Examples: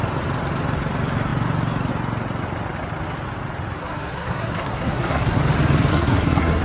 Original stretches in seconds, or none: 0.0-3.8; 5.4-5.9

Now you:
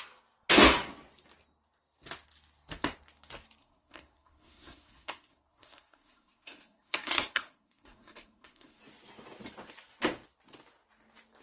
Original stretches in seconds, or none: 0.0-3.6; 8.8-11.4

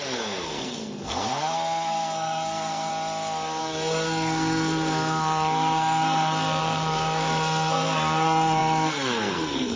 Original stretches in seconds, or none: 2.9-3.6

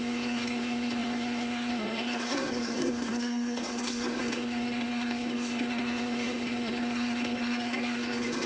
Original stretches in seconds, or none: none

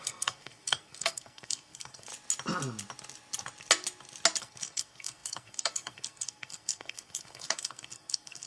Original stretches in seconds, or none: 2.1-4.4

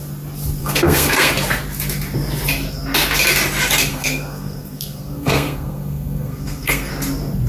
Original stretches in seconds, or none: 0.0-0.6; 1.3-3.9; 6.9-7.5

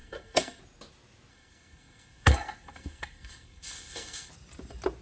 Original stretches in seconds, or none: 0.6-1.3; 4.3-5.0

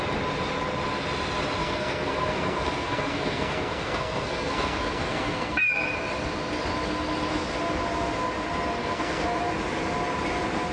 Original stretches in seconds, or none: 0.0-1.6; 5.7-8.8; 9.4-10.7